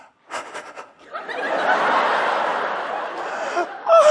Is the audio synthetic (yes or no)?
no